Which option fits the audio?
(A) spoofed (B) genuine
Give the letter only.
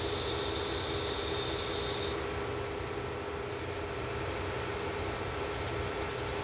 B